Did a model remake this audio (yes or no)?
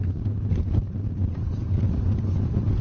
no